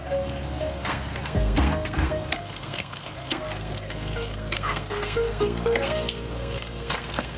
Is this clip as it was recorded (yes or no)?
no